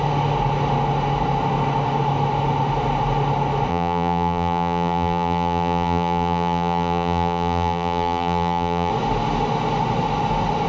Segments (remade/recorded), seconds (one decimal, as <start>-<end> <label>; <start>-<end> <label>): 0.0-3.7 recorded; 3.7-8.9 remade; 8.9-10.7 recorded